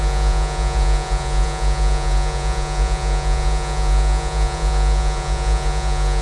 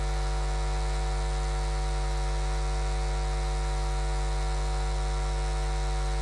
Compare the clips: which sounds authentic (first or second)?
second